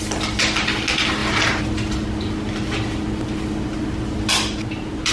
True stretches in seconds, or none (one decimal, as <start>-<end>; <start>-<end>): 0.0-5.1